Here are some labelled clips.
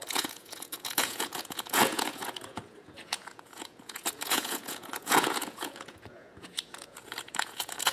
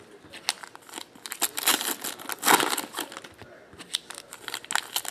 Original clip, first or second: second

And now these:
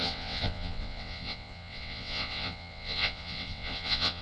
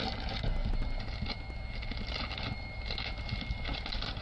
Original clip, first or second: second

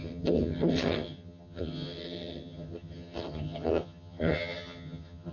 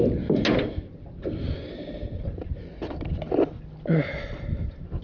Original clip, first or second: second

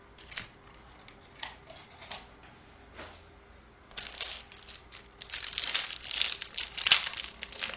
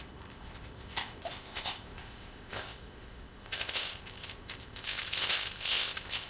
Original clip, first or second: first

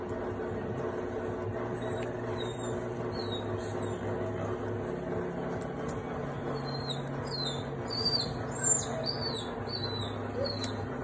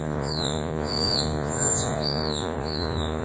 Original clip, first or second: first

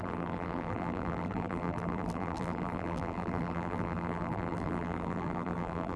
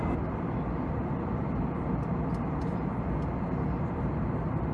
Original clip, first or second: second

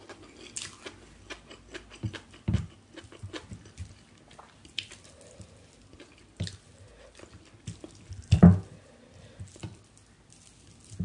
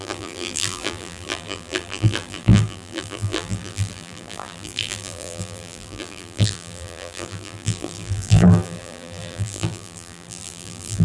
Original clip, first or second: first